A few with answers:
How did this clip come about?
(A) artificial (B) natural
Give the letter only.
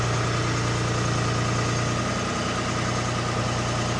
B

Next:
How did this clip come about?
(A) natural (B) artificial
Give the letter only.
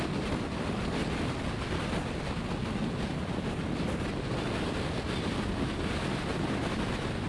A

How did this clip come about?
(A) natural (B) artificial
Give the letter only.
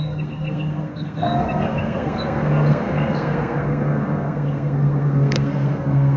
B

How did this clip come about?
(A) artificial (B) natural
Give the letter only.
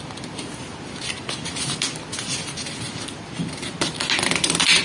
B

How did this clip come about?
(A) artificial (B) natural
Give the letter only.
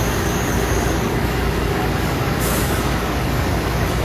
A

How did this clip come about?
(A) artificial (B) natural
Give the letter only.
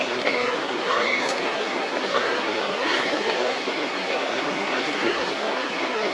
A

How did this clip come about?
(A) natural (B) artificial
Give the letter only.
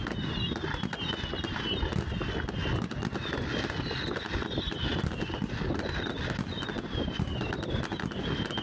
A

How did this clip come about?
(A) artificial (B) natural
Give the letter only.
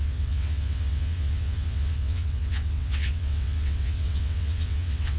A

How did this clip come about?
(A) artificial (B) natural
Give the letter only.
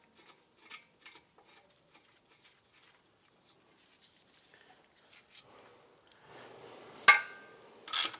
B